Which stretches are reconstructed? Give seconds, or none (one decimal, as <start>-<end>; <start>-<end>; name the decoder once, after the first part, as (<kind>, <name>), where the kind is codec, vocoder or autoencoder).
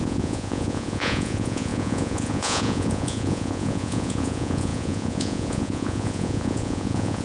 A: 0.0-7.2 (vocoder, Vocos)